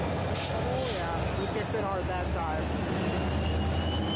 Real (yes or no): yes